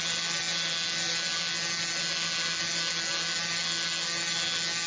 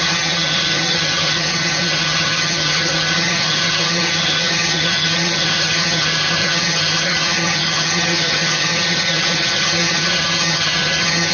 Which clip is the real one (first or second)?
first